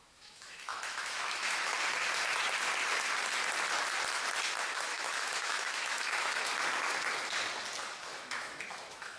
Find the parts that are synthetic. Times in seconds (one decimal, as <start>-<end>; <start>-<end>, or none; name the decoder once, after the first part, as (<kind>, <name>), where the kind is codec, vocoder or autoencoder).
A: 0.0-1.7 (autoencoder, DAC-VAE); 4.7-6.5; 8.0-9.2